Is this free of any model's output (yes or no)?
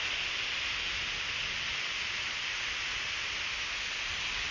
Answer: yes